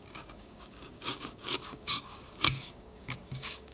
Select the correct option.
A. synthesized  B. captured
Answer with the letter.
A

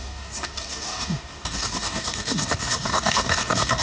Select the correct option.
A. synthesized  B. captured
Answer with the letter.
A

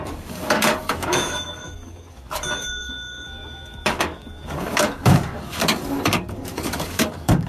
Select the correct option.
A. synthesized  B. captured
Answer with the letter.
A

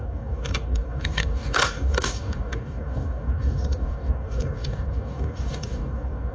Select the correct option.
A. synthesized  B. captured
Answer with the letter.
A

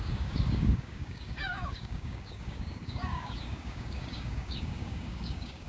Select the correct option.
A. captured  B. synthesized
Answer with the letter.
B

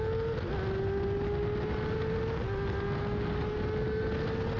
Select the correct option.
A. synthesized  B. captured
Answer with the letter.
B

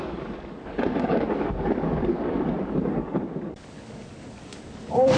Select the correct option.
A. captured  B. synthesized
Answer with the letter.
B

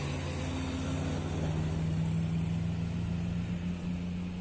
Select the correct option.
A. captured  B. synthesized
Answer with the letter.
A